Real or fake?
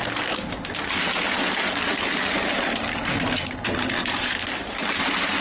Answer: real